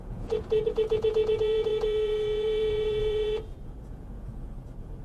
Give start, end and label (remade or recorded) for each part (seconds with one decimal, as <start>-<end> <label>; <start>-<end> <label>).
0.0-5.0 remade